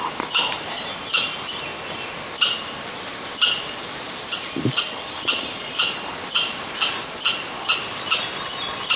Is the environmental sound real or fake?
real